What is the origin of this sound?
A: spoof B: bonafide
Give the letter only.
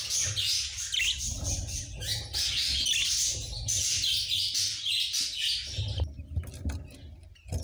B